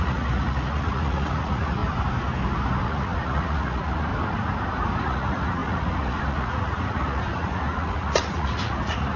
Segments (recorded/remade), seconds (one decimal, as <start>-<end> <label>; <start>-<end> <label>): 0.0-1.8 remade; 1.8-2.8 recorded; 2.8-4.1 remade; 4.1-5.0 recorded; 5.0-9.2 remade